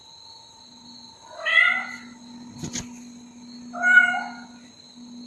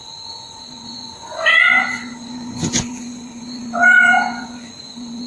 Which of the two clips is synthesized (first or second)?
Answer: second